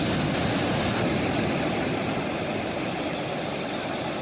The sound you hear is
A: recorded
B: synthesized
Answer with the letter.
A